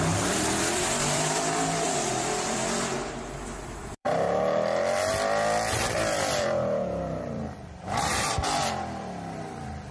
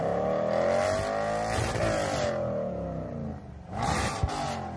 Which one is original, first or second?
second